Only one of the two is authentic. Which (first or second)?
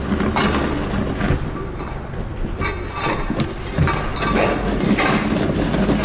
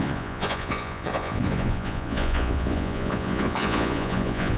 first